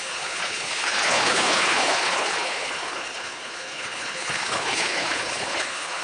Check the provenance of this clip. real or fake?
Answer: fake